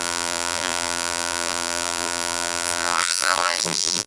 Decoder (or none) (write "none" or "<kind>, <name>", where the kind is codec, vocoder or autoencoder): vocoder, BigVGAN v2